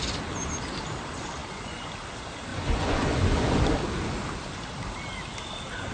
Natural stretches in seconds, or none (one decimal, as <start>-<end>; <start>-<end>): 0.0-1.4; 1.9-2.5; 3.6-5.9